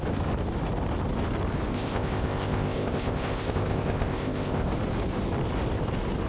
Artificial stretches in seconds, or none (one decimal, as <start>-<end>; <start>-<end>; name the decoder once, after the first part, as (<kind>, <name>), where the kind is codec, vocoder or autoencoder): 1.7-4.7 (codec, ZipCodec)